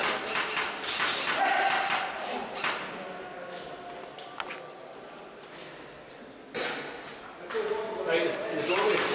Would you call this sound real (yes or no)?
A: yes